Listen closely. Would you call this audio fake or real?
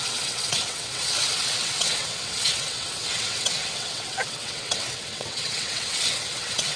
fake